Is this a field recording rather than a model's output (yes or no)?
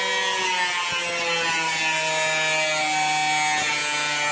yes